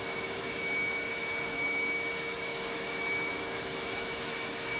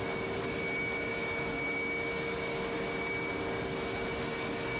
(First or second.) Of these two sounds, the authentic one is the second